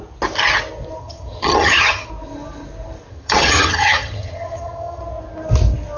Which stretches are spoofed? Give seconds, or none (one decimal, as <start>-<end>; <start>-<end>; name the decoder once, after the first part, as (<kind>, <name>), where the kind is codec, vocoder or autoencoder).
1.0-2.1 (vocoder, HiFi-GAN); 3.1-5.0